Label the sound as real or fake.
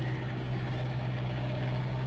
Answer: fake